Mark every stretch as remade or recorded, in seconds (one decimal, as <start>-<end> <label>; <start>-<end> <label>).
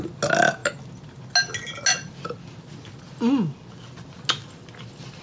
0.0-5.2 recorded